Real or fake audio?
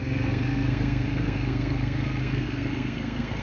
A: fake